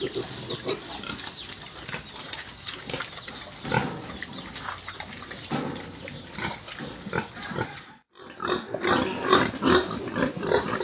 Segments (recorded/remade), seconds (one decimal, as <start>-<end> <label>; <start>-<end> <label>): 0.0-2.2 recorded; 2.2-3.0 remade; 3.0-10.8 recorded